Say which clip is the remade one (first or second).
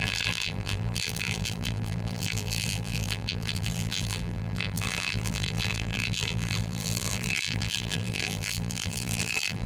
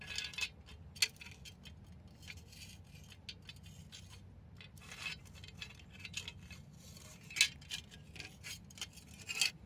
first